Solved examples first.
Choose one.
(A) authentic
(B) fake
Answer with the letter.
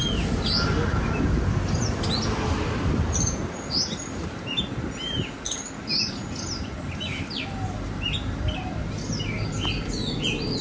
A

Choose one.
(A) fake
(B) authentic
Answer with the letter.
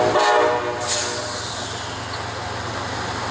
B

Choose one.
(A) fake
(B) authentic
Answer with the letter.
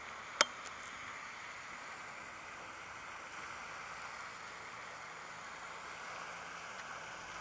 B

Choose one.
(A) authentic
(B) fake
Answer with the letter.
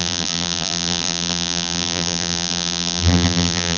B